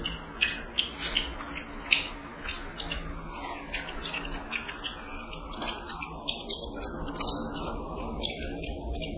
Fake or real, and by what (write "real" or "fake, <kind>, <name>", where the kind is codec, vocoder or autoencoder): real